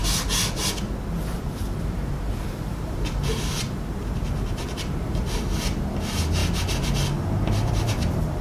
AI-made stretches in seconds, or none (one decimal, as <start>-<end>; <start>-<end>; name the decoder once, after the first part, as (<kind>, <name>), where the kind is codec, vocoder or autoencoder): 1.2-6.4 (vocoder, BigVGAN v2); 7.1-8.4

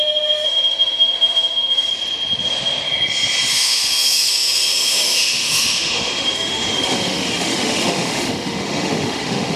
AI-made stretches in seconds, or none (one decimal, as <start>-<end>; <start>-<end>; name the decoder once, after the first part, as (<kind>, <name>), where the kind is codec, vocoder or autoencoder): 0.0-1.9 (autoencoder, DAC-VAE); 3.5-9.6

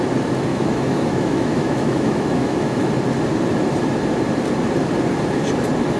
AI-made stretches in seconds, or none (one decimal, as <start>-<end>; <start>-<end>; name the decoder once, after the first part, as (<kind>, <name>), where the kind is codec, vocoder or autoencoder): 0.5-2.9 (autoencoder, DAC-VAE)

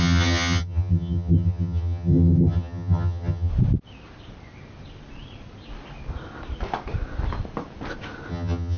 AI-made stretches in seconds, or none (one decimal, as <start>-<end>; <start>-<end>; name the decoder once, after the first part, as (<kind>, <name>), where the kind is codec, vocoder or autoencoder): 0.0-3.5 (vocoder, HiFi-GAN); 8.3-8.8

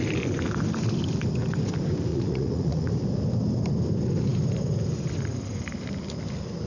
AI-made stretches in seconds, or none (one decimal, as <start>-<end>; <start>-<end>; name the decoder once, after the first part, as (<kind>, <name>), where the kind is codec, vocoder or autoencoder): 2.1-2.9 (vocoder, Vocos)